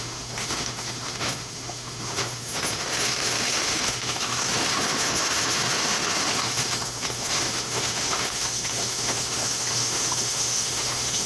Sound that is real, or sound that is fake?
fake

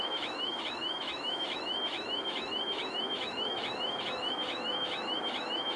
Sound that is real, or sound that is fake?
fake